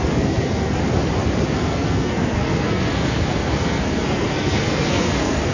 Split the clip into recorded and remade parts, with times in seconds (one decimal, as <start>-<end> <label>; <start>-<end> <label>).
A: 0.0-0.8 remade; 0.8-1.4 recorded; 1.4-5.5 remade